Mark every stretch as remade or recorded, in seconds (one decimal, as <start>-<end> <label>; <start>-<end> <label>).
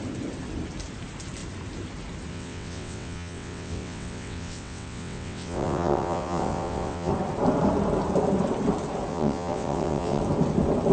0.0-2.3 recorded; 2.3-7.1 remade; 7.1-9.1 recorded; 9.1-10.2 remade; 10.2-10.9 recorded